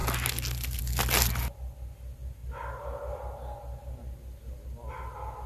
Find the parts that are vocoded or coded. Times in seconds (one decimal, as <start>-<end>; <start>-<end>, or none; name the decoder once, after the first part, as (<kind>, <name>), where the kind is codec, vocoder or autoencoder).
none